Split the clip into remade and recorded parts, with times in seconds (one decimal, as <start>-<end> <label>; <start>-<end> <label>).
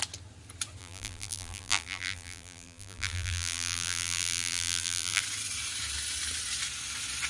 0.0-0.8 recorded; 0.8-5.2 remade; 5.2-7.3 recorded